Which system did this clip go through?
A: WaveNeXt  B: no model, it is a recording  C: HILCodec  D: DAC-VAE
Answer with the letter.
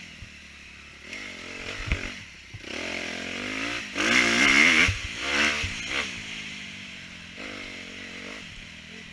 B